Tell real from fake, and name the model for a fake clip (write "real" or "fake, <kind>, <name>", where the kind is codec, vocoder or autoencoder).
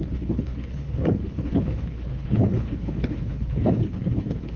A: fake, codec, HILCodec